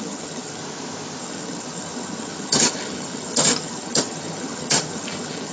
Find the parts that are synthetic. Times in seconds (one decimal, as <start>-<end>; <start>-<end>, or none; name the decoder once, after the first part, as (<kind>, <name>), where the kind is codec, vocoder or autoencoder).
0.0-0.6 (vocoder, HiFi-GAN); 1.2-5.5

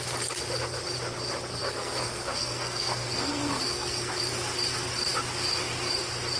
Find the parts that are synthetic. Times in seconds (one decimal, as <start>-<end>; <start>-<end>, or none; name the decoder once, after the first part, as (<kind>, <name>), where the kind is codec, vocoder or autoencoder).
1.6-4.2 (codec, SNAC)

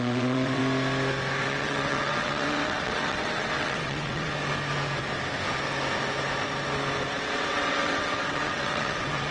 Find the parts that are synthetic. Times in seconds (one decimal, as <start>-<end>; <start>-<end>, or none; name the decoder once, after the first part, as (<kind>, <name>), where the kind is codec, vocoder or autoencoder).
0.0-0.6 (vocoder, WaveNeXt); 1.4-4.3; 7.1-9.3

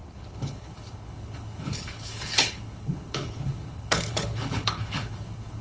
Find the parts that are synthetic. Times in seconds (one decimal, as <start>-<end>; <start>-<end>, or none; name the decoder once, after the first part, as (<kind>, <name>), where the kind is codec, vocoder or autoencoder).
0.0-5.6 (codec, HILCodec)

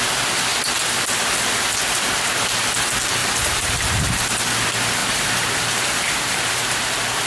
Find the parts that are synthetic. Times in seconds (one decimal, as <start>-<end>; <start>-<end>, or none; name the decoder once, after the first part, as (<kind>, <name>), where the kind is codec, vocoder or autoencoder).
3.2-3.7 (vocoder, BigVGAN v2); 5.0-6.8

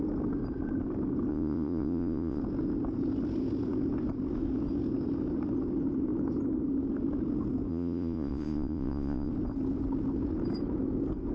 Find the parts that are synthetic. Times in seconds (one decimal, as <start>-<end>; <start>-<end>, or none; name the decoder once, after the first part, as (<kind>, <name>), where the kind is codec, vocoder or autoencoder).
1.3-2.4 (vocoder, Vocos); 7.7-9.3

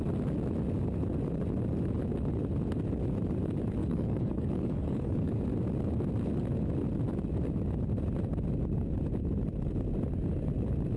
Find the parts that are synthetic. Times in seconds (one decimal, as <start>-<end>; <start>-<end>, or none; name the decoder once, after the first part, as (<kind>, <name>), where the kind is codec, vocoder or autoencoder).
3.8-5.4 (codec, DAC)